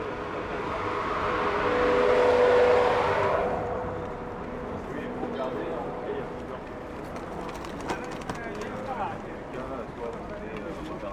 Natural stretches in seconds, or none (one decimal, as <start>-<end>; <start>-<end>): 0.0-3.4; 6.3-11.1